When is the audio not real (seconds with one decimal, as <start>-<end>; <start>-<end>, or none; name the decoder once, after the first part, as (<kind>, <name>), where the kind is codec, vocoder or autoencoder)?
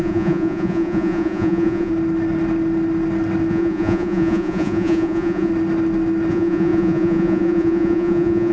0.0-1.9 (vocoder, Vocos); 3.5-5.5; 6.3-8.5